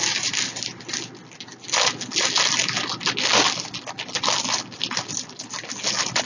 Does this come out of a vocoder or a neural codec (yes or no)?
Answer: no